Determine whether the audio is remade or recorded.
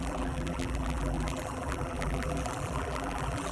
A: remade